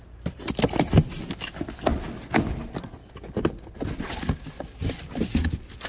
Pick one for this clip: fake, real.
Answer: real